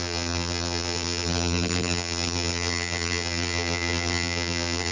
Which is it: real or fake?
fake